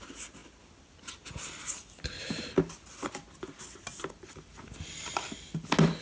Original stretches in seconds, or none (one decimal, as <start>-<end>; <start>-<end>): 0.0-6.0